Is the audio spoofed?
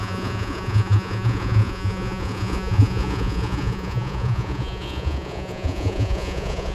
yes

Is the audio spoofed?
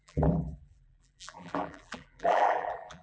yes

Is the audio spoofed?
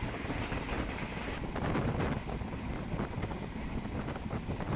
no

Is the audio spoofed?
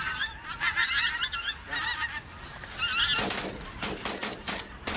no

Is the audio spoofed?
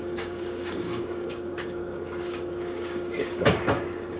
yes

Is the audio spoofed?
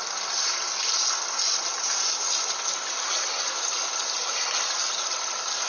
no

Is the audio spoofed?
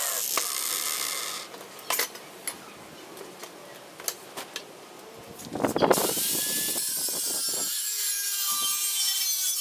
no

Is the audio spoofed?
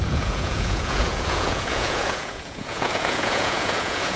yes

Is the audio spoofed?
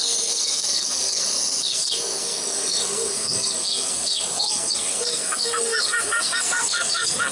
yes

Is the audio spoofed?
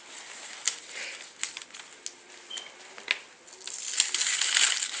no